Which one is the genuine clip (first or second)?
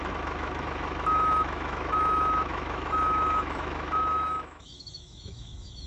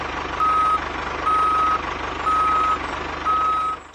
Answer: second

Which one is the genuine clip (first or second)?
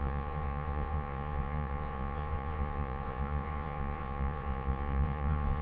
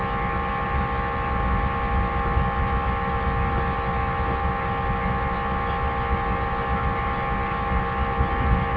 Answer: second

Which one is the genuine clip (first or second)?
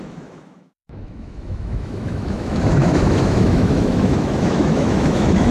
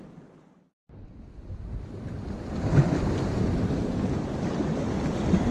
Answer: second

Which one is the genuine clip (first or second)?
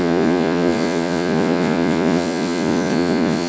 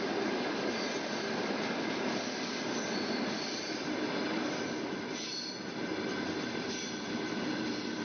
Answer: second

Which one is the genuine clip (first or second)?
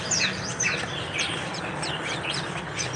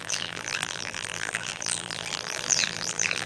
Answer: first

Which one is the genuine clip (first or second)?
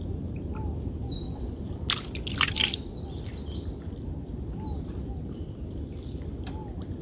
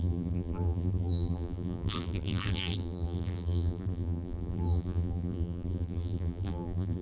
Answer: first